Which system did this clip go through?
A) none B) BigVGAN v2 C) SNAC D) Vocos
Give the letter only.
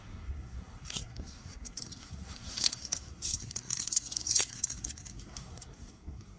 C